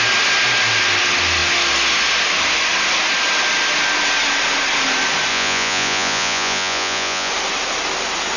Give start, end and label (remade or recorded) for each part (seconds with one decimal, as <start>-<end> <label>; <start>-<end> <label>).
0.0-5.3 recorded; 5.3-7.3 remade; 7.3-8.4 recorded